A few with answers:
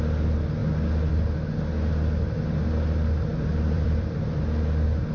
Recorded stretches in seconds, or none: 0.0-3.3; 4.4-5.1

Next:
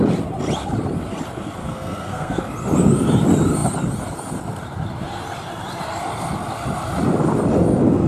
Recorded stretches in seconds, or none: 0.0-1.6; 2.4-8.1